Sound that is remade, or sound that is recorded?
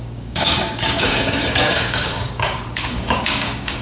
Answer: remade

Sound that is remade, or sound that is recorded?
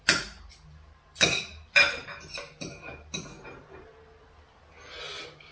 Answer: recorded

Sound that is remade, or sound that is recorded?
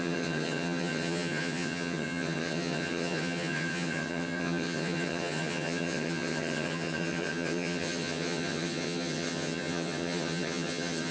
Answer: remade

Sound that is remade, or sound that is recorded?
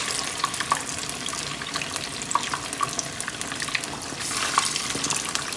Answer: recorded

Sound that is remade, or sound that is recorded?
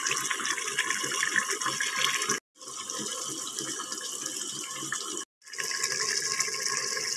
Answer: recorded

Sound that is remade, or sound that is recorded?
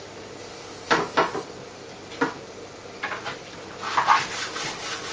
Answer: recorded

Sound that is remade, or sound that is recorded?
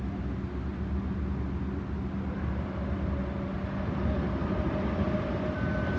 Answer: recorded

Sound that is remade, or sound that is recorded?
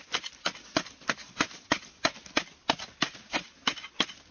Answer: recorded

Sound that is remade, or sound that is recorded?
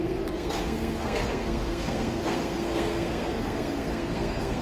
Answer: remade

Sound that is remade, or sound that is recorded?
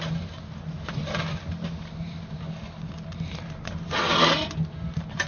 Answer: recorded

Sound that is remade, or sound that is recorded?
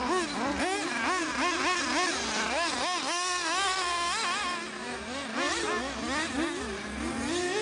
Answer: recorded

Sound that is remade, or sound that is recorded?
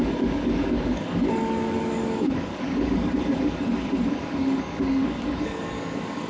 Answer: remade